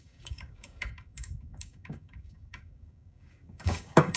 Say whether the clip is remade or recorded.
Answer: remade